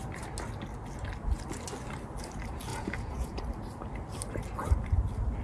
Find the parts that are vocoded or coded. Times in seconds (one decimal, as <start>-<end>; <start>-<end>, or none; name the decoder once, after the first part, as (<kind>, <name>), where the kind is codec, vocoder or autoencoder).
2.7-3.4 (vocoder, Vocos)